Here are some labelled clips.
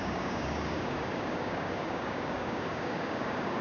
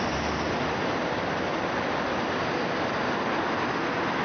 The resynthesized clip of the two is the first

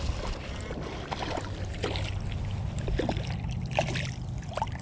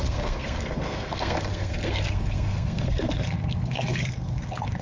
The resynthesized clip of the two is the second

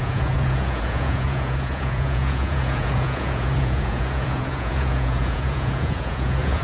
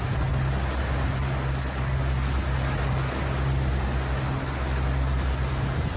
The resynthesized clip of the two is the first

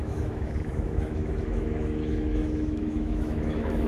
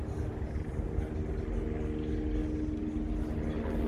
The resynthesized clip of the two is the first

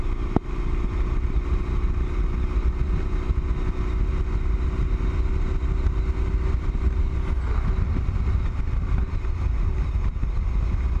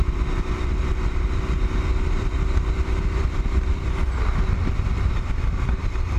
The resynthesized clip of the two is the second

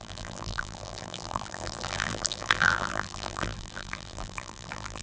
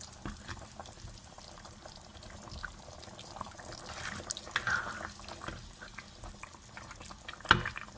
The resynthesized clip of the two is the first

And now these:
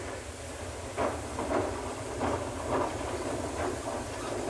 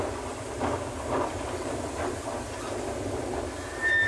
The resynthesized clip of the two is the first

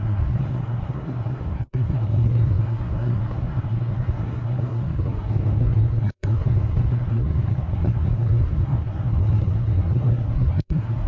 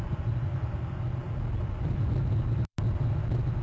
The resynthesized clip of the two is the first